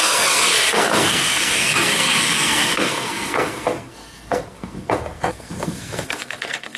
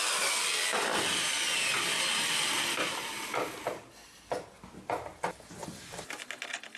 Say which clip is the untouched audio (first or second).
second